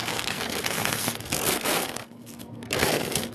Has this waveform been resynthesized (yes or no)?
yes